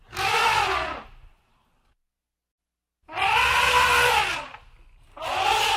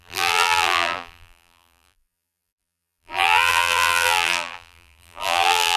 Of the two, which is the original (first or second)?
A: first